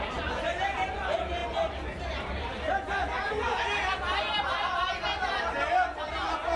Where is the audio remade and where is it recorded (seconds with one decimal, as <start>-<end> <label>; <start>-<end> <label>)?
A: 0.0-6.6 recorded